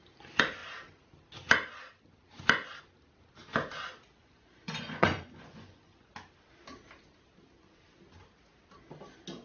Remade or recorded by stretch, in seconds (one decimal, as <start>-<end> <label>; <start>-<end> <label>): 0.0-4.2 recorded; 4.2-6.1 remade; 6.1-9.4 recorded